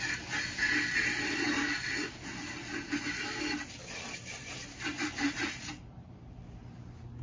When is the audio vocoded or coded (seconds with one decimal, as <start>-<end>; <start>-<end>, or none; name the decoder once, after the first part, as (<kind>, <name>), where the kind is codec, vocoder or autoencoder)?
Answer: 3.8-6.6 (vocoder, BigVGAN v2)

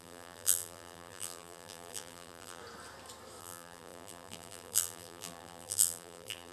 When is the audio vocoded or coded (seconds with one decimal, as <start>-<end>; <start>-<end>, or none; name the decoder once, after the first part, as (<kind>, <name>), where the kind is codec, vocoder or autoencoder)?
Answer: 0.0-2.6 (vocoder, BigVGAN v2); 3.4-6.5

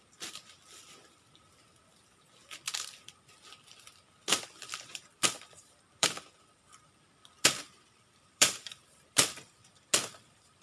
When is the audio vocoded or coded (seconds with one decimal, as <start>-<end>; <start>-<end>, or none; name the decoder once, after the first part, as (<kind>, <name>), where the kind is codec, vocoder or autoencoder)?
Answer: 4.3-9.5 (vocoder, BigVGAN v2)

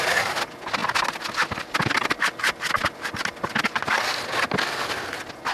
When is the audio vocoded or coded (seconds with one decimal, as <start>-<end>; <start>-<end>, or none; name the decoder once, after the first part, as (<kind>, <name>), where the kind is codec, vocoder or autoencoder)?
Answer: none

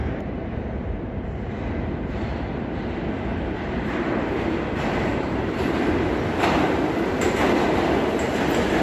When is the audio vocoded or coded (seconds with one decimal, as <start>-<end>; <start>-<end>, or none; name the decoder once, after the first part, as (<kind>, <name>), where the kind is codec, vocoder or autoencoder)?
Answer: 0.0-1.5 (vocoder, BigVGAN v2); 3.3-4.3; 5.1-5.9

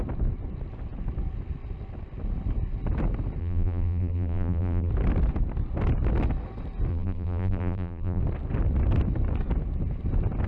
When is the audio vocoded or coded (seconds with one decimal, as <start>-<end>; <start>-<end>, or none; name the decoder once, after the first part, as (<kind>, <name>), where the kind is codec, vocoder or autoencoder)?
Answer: 3.4-4.9 (vocoder, BigVGAN v2); 6.9-8.2

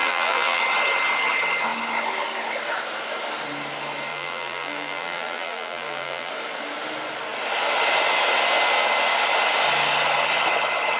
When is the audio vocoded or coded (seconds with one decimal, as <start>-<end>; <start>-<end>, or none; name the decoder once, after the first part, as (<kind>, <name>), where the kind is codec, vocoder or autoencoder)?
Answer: 0.0-0.6 (vocoder, BigVGAN v2); 4.1-6.3

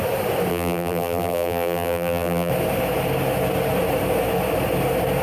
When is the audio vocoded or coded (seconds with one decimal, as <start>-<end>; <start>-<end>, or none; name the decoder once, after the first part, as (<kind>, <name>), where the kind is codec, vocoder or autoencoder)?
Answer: 0.5-2.5 (vocoder, BigVGAN v2)